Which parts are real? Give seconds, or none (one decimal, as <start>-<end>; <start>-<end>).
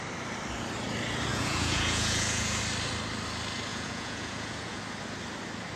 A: 0.0-1.3; 2.6-3.7; 4.8-5.8